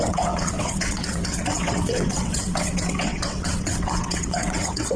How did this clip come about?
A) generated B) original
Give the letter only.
A